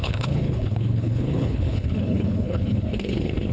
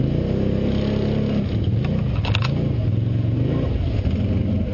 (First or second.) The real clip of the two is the second